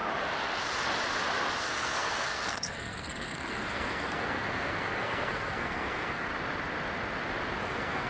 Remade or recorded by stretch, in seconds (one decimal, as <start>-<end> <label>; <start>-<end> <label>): 0.0-1.6 recorded; 1.6-6.3 remade; 6.3-7.6 recorded; 7.6-8.1 remade